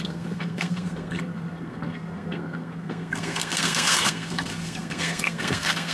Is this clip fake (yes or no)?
yes